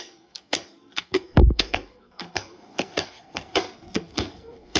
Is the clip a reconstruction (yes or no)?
yes